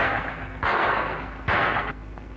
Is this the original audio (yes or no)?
no